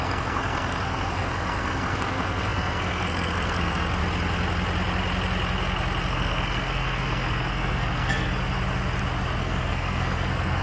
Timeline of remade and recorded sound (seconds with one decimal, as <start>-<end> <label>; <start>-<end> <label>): 0.0-4.0 remade; 4.0-6.1 recorded; 6.1-8.3 remade; 8.3-9.4 recorded; 9.4-10.6 remade

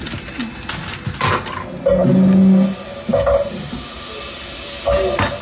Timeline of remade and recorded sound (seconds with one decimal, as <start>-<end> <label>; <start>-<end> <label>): 0.0-5.4 recorded

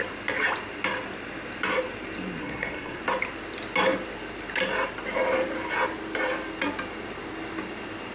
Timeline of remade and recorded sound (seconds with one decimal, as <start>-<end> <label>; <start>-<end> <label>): 0.0-2.4 recorded; 2.4-3.0 remade; 3.0-8.1 recorded

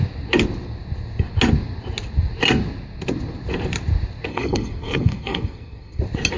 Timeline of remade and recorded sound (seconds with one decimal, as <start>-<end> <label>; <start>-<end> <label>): 0.0-4.3 recorded; 4.3-6.0 remade; 6.0-6.4 recorded

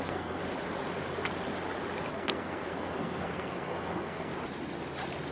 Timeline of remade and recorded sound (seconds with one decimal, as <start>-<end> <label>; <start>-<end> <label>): 0.0-0.4 remade; 0.4-2.1 recorded; 2.1-4.3 remade; 4.3-5.3 recorded

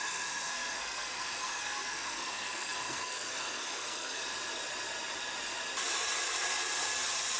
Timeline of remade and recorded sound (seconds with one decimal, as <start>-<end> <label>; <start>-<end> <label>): 0.0-4.2 remade; 4.2-7.4 recorded

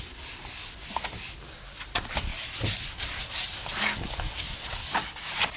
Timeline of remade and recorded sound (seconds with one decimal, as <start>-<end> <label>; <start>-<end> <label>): 0.0-5.6 recorded